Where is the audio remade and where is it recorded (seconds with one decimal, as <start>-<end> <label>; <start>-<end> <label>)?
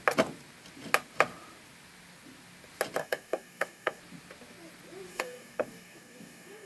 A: 0.0-3.0 recorded; 3.0-4.0 remade; 4.0-5.1 recorded; 5.1-6.7 remade